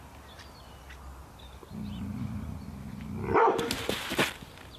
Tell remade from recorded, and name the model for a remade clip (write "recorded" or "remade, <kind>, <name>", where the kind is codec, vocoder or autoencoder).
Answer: recorded